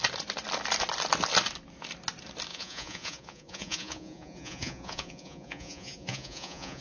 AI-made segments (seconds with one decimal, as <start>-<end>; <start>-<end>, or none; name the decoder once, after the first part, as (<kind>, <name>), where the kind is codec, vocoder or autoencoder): 2.5-6.8 (vocoder, Vocos)